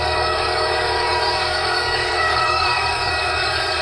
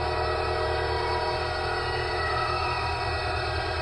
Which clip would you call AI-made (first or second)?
first